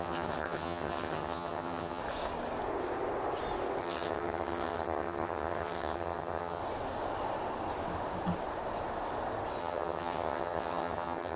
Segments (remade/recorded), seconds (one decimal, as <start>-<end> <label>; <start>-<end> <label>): 0.0-2.0 remade; 2.0-3.8 recorded; 3.8-6.6 remade; 6.6-9.6 recorded; 9.6-11.4 remade